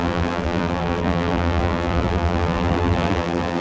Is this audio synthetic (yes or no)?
yes